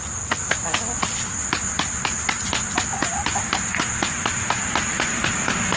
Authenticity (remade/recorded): recorded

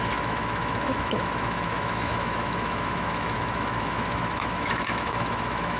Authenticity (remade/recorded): remade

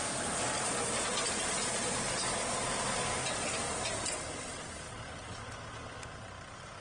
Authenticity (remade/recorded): recorded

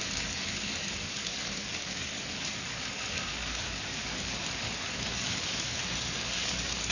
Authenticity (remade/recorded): remade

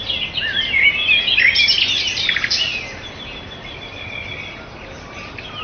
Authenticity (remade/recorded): recorded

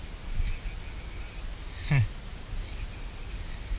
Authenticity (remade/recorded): recorded